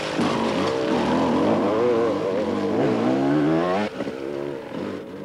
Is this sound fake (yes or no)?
no